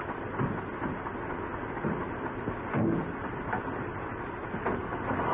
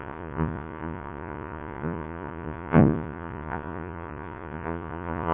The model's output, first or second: second